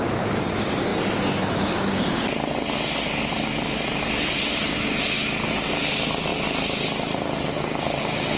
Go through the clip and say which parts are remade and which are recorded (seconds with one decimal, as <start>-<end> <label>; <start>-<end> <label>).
0.0-8.4 recorded